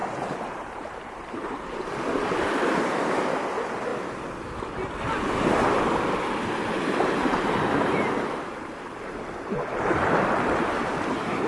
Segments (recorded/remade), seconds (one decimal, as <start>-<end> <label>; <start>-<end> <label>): 0.0-3.9 remade; 3.9-6.6 recorded; 6.6-11.5 remade